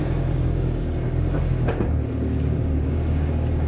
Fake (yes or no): yes